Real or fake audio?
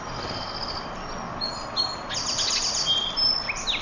real